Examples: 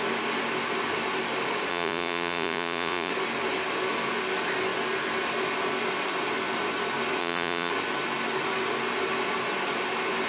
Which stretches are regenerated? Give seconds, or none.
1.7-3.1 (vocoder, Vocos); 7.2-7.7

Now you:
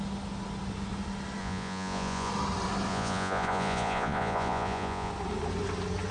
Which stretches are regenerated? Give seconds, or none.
1.4-2.3 (vocoder, Vocos); 2.9-5.1

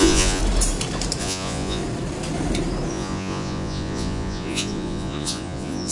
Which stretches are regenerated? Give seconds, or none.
0.0-0.4 (vocoder, Vocos); 1.2-1.8; 2.9-5.9

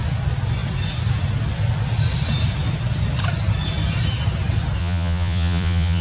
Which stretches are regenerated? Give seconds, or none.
4.8-6.0 (vocoder, Vocos)